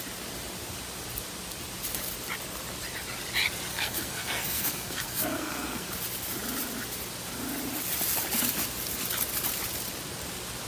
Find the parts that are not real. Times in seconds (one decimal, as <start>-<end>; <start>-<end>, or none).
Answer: 3.7-5.9